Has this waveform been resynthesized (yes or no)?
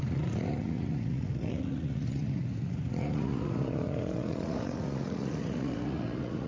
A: yes